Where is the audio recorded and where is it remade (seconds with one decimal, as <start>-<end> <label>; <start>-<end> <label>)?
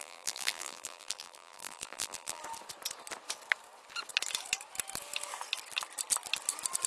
0.0-2.4 remade; 2.4-6.9 recorded